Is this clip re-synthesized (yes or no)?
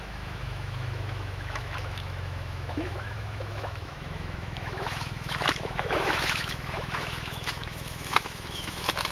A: yes